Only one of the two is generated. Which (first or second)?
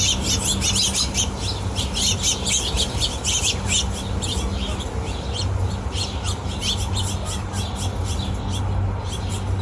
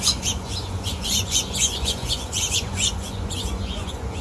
second